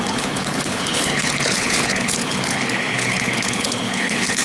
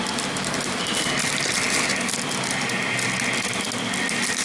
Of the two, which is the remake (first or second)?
first